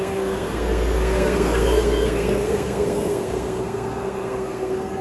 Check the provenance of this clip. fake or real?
fake